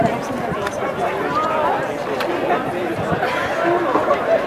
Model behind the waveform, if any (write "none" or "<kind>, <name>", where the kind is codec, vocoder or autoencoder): none